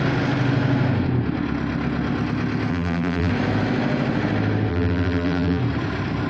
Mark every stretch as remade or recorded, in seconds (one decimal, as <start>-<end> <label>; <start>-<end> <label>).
0.0-2.7 recorded; 2.7-3.3 remade; 3.3-4.7 recorded; 4.7-5.6 remade; 5.6-6.3 recorded